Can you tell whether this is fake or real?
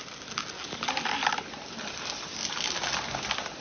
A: real